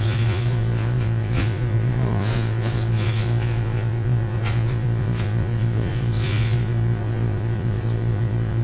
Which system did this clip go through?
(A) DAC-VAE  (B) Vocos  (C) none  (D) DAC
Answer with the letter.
B